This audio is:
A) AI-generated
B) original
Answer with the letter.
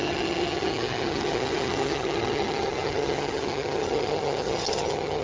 A